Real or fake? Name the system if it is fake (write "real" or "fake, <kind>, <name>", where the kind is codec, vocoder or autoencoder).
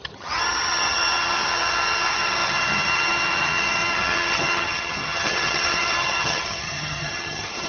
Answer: fake, vocoder, HiFi-GAN